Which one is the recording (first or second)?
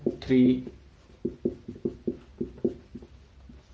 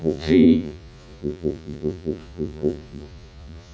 first